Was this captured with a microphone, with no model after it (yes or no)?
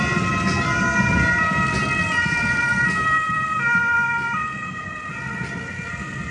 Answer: yes